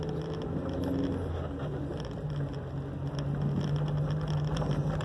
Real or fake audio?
real